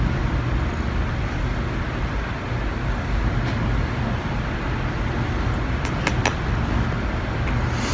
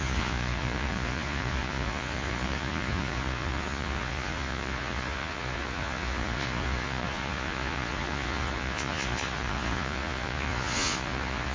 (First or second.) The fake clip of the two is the second